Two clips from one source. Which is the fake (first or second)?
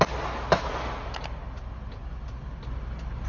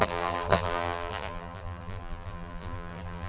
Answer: second